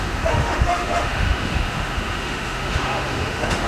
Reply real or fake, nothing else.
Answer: fake